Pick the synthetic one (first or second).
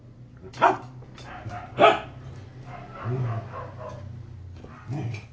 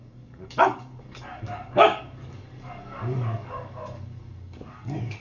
second